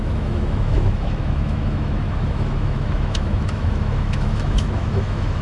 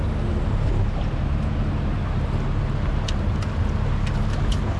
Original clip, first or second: second